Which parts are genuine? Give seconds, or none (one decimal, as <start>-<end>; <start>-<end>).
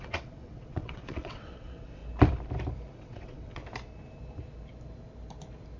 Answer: 2.0-2.9; 3.6-5.8